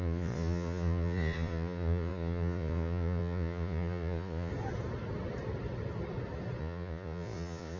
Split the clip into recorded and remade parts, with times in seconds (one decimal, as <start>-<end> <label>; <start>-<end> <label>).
0.0-4.5 remade; 4.5-6.6 recorded; 6.6-7.8 remade